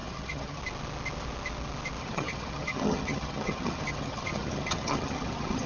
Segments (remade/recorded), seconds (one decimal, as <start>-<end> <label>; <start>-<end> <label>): 0.0-0.6 remade; 0.6-2.0 recorded; 2.0-5.7 remade